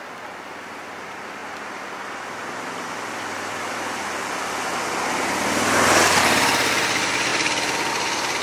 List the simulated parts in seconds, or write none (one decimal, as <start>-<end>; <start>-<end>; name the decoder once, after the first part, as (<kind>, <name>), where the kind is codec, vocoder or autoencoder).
none